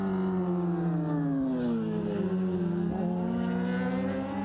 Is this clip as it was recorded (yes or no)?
yes